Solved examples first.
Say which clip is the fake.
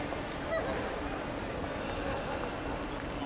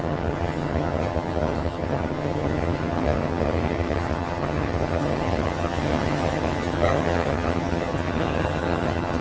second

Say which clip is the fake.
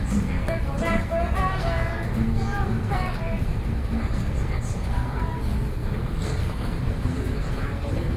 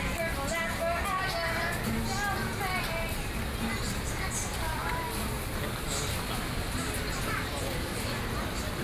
first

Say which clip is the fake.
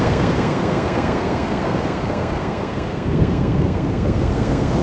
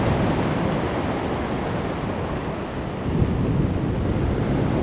first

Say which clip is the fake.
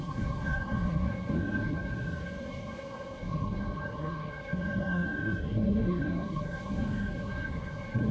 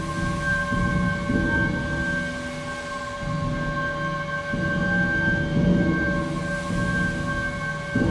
first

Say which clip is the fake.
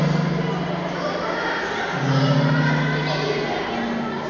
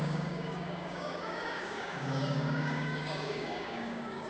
second